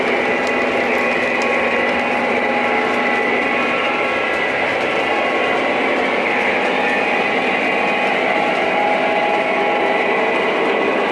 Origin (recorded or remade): recorded